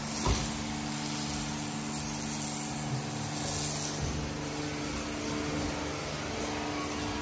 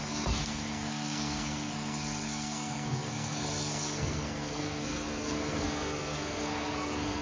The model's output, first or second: second